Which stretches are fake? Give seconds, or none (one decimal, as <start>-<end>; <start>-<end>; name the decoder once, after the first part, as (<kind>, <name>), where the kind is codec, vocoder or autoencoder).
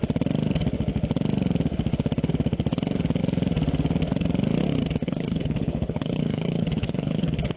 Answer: 5.0-7.6 (codec, HILCodec)